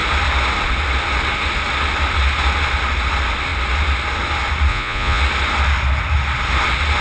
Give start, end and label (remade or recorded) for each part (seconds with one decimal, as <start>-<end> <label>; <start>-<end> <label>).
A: 0.0-4.7 recorded; 4.7-5.2 remade; 5.2-7.0 recorded